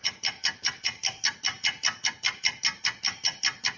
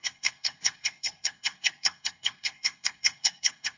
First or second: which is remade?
second